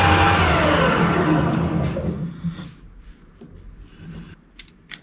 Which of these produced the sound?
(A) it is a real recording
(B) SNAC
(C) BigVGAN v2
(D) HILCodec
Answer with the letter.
C